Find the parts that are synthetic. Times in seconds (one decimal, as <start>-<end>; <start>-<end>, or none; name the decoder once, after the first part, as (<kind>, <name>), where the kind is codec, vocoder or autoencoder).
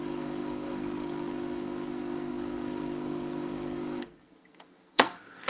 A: 0.0-5.5 (codec, SNAC)